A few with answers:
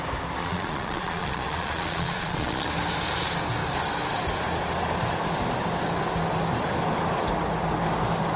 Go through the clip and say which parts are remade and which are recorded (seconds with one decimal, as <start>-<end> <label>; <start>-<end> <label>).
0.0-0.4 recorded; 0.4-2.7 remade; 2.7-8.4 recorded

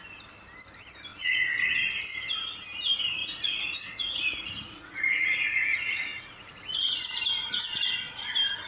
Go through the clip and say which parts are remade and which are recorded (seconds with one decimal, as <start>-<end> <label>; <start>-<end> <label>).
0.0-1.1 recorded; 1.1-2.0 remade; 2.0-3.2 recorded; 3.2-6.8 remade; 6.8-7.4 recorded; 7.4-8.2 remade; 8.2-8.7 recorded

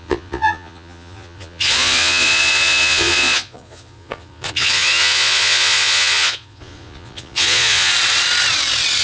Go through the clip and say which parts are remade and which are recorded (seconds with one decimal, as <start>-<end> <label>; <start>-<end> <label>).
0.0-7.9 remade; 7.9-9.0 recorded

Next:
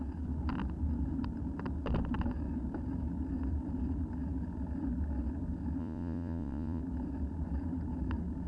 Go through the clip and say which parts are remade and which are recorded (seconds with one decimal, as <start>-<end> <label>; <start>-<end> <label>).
0.0-5.8 recorded; 5.8-6.8 remade; 6.8-8.5 recorded

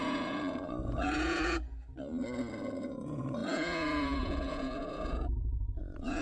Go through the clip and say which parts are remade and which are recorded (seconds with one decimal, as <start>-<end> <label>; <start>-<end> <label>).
0.0-1.8 remade; 1.8-2.8 recorded; 2.8-6.2 remade